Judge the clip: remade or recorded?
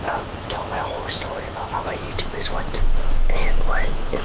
remade